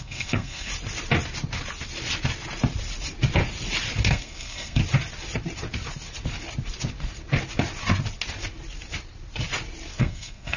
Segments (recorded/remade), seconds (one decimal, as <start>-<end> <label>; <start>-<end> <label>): 0.0-0.7 remade; 0.7-4.1 recorded; 4.1-4.8 remade; 4.8-10.0 recorded; 10.0-10.6 remade